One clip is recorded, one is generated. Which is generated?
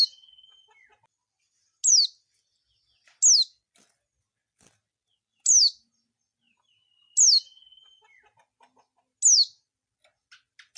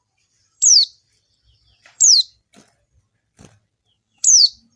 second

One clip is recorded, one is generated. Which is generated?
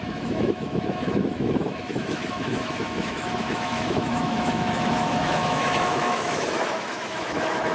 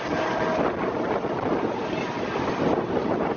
first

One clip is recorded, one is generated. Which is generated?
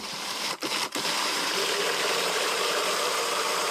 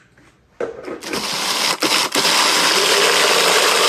first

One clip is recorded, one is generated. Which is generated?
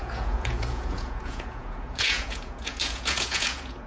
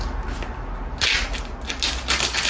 first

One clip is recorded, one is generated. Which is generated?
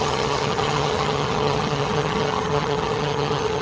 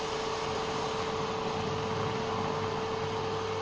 first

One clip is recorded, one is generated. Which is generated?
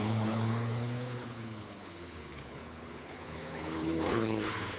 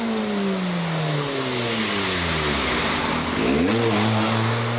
first